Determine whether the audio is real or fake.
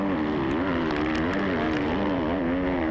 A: real